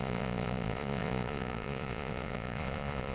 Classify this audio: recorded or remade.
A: remade